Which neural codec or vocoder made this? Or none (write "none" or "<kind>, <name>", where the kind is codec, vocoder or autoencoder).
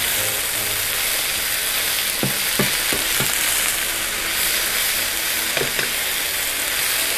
none